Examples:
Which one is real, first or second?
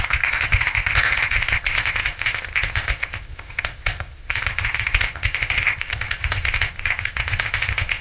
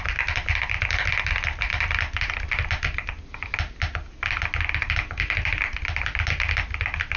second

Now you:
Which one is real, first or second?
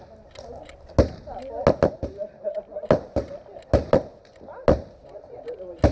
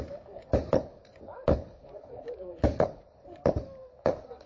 first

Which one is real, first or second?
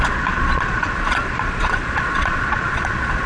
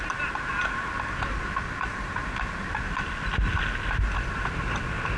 second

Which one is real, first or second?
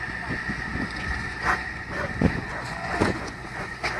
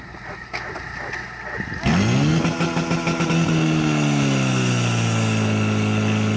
second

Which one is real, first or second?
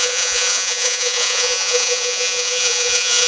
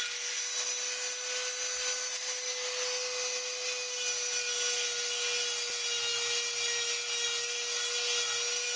second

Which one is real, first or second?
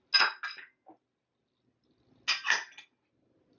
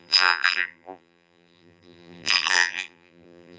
first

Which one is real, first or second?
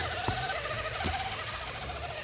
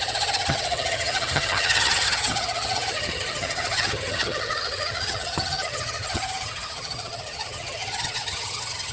first